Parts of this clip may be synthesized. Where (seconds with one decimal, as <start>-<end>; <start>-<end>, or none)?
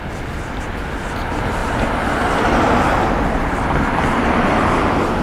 none